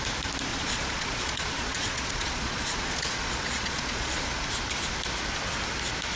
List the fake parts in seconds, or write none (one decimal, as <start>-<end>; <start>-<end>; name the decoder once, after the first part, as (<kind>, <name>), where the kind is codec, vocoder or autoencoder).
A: 0.5-4.2 (vocoder, Vocos)